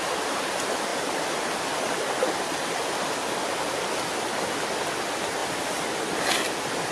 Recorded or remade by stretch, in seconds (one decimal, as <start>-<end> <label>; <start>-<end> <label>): 0.0-6.9 recorded